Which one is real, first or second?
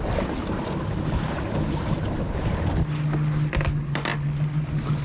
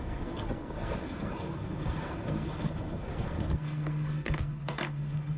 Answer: first